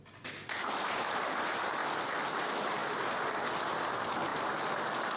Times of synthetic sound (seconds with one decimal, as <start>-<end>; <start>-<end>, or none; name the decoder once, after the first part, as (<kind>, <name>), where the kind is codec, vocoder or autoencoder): none